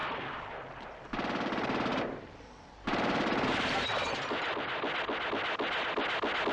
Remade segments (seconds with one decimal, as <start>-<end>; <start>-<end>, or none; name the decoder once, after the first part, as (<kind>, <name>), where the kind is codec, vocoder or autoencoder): 1.9-4.3 (vocoder, BigVGAN v2)